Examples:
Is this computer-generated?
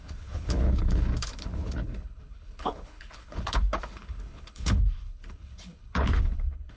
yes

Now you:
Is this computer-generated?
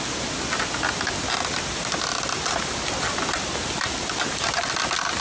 no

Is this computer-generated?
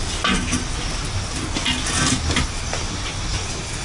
no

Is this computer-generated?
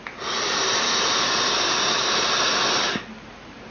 no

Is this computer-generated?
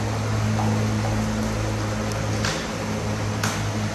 no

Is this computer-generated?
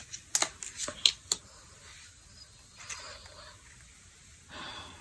no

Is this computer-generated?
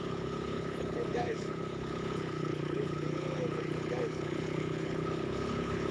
yes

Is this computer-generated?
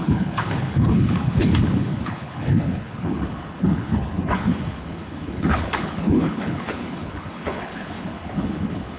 yes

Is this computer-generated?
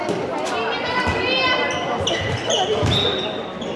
no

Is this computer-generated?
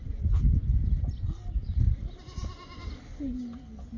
no